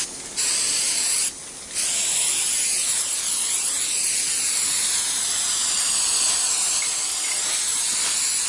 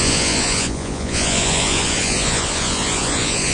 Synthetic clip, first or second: second